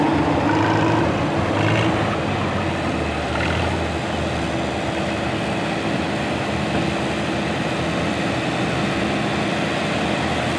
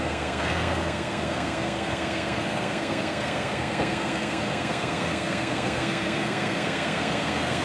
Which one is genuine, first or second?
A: first